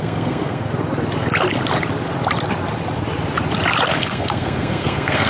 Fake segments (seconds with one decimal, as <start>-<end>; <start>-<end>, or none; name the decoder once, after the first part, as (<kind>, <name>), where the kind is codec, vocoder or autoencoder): 0.0-0.7 (codec, SNAC); 3.9-5.3